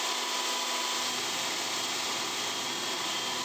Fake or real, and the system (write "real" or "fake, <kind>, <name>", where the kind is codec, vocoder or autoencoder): real